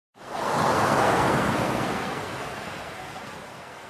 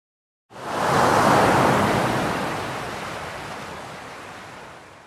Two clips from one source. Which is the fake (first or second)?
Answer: first